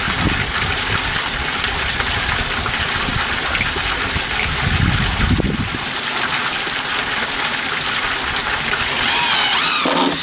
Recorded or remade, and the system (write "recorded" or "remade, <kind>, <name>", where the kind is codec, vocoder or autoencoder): recorded